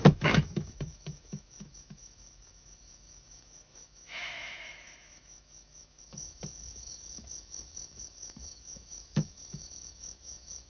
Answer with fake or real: fake